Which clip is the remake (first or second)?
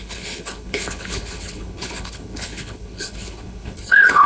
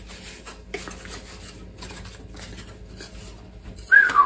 first